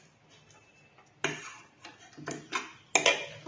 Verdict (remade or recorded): recorded